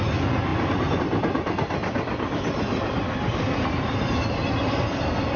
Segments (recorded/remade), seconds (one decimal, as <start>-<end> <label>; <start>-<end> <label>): 0.0-5.4 recorded